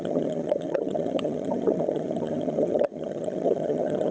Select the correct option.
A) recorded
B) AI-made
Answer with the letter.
B